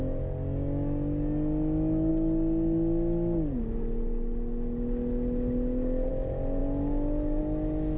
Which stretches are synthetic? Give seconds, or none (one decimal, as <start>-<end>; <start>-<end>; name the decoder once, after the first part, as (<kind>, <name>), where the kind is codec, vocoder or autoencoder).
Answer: none